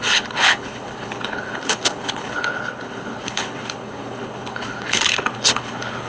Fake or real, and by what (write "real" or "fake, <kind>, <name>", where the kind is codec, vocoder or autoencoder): fake, codec, HILCodec